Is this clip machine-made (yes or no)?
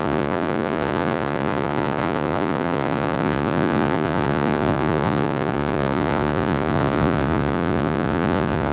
yes